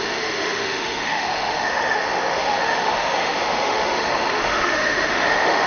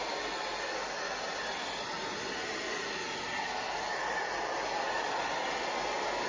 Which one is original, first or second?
second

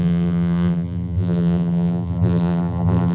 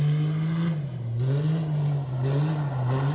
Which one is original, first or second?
second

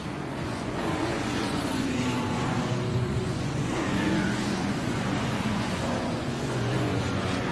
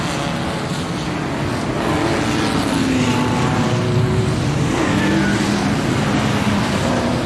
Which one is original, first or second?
second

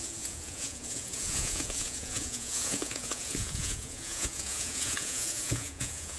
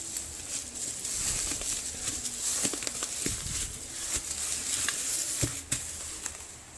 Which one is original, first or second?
second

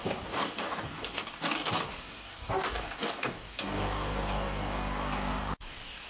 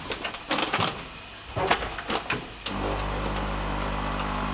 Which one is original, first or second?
second